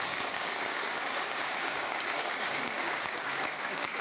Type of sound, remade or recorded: remade